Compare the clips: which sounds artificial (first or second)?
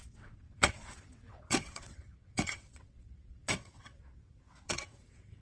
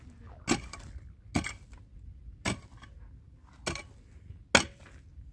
first